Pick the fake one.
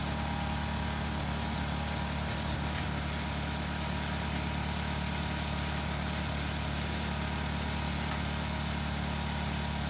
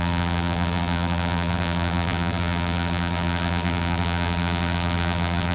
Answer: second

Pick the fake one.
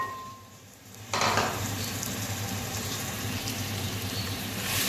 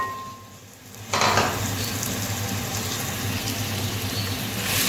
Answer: first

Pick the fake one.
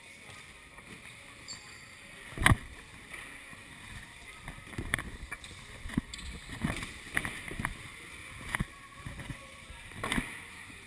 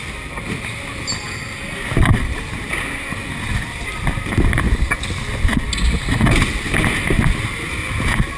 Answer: first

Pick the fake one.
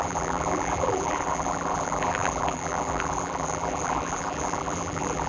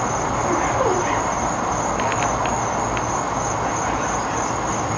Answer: first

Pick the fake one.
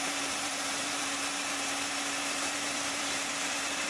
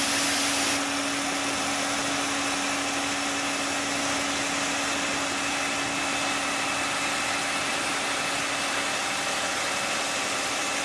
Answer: first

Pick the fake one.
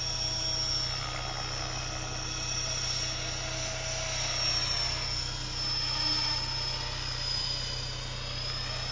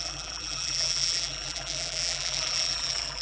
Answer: second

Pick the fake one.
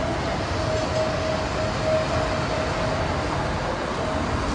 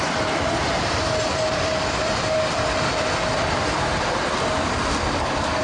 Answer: second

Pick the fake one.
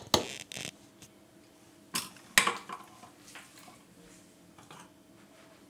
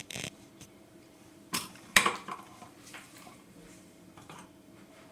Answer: second